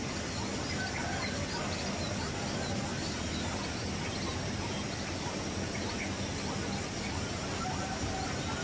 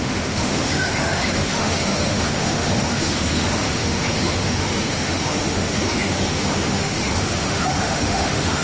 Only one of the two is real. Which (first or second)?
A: first